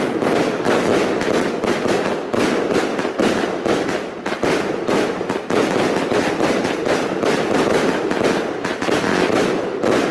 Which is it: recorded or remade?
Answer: remade